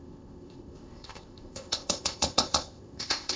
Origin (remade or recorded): remade